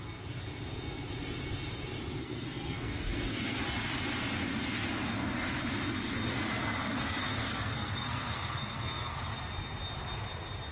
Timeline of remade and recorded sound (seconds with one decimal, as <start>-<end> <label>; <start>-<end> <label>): 0.0-2.2 recorded; 2.2-3.6 remade; 3.6-6.8 recorded; 6.8-9.2 remade; 9.2-10.7 recorded